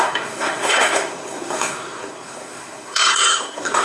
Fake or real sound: fake